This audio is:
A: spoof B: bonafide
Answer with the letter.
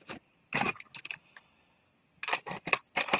B